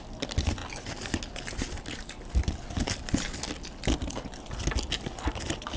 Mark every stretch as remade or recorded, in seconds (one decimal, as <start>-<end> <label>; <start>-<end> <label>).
0.0-5.8 recorded